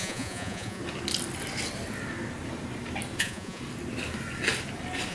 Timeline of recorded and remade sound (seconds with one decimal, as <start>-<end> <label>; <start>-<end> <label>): 0.0-0.8 remade; 0.8-3.2 recorded; 3.2-3.6 remade; 3.6-5.1 recorded